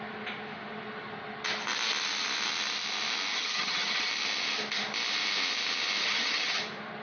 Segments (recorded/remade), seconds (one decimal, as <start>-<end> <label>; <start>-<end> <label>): 0.0-3.3 recorded; 3.3-4.1 remade; 4.1-6.0 recorded; 6.0-6.6 remade; 6.6-7.0 recorded